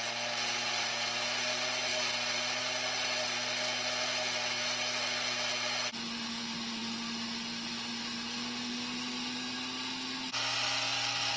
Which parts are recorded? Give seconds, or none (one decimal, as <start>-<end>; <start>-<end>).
0.0-11.4